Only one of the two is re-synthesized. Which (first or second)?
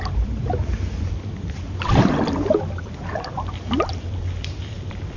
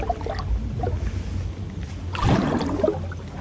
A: first